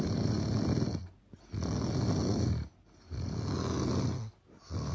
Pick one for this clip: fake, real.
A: real